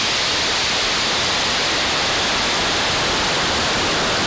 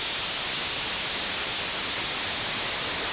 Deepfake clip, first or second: first